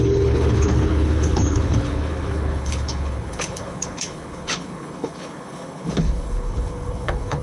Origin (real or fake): fake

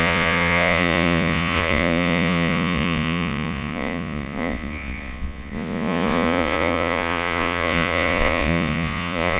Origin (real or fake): fake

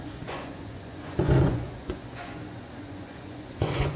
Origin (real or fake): fake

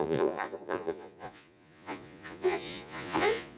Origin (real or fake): fake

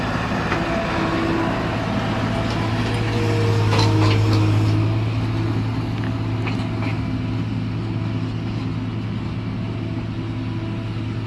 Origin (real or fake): real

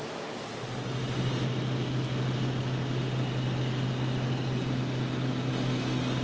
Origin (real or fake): real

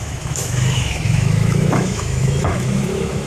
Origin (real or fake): fake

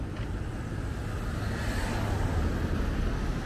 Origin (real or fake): real